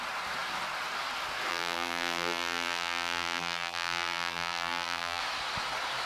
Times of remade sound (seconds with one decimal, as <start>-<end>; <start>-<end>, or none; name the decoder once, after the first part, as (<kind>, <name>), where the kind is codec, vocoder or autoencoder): 1.5-5.2 (vocoder, BigVGAN v2)